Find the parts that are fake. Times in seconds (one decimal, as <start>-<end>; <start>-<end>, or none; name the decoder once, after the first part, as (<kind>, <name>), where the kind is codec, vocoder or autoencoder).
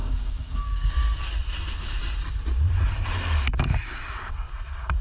0.0-0.9 (codec, DAC)